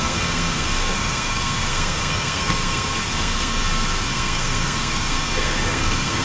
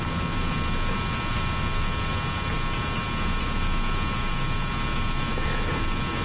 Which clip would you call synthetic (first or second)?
first